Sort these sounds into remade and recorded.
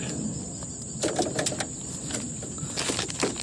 recorded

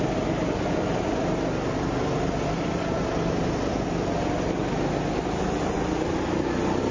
recorded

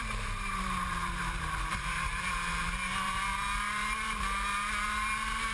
remade